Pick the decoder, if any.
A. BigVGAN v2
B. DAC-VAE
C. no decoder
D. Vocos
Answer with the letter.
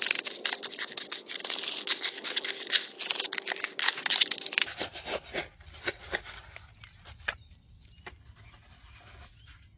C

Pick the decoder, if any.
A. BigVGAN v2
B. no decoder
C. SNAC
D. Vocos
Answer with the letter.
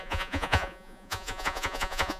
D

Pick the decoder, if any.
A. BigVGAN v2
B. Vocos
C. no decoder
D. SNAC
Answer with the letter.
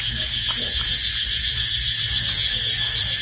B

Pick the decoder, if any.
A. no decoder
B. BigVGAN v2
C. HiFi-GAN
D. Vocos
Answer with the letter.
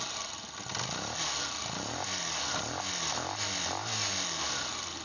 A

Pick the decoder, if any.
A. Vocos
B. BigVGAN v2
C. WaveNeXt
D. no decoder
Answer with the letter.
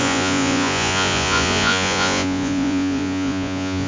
A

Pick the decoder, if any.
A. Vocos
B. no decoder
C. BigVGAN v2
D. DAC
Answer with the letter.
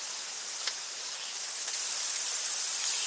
B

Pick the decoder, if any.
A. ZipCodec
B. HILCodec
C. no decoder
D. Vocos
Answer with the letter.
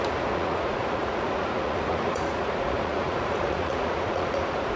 D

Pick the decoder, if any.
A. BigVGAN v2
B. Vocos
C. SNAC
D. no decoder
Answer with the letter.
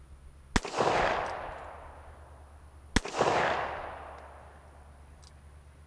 D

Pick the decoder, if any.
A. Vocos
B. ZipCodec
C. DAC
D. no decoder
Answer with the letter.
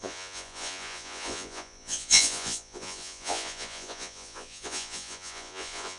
A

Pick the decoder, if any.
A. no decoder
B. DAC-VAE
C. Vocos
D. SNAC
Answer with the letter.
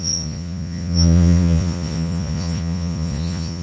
C